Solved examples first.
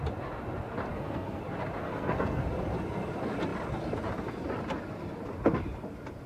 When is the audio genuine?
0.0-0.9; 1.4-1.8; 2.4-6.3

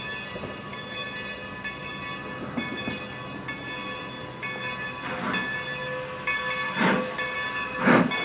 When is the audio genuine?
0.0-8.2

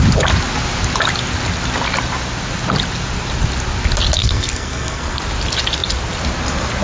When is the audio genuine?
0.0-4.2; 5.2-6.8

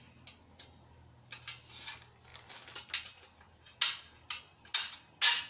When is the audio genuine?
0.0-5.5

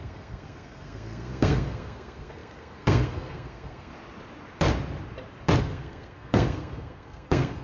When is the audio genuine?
3.9-5.6

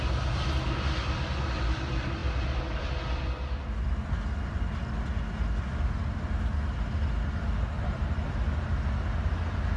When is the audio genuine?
0.0-9.8